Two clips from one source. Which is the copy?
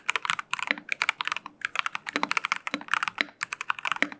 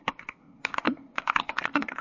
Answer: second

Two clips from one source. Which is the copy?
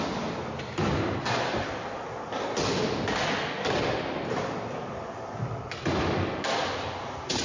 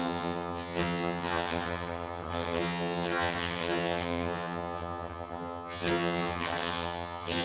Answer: second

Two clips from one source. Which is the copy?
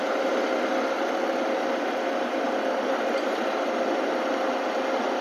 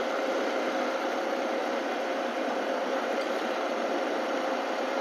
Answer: second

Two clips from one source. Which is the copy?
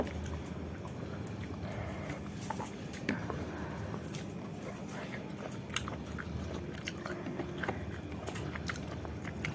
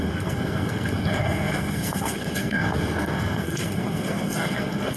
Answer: second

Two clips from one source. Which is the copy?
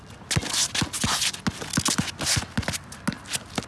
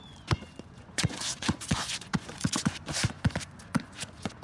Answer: second